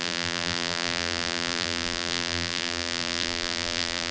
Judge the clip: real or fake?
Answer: fake